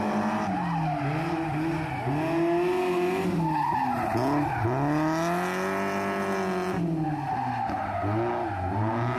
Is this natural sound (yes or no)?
yes